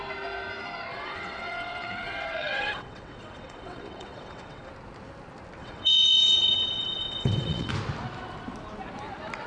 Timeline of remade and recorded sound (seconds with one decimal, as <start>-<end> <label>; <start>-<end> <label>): 0.0-0.9 recorded; 0.9-4.7 remade; 4.7-5.6 recorded; 5.6-7.7 remade; 7.7-9.5 recorded